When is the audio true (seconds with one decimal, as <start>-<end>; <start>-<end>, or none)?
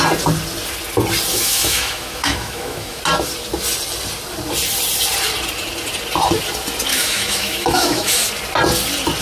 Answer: 0.0-1.3; 3.0-6.9; 8.3-9.2